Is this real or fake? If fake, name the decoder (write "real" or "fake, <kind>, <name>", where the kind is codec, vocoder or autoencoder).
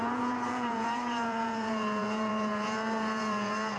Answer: fake, vocoder, Vocos